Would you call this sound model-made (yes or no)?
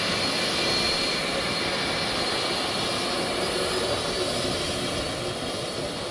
no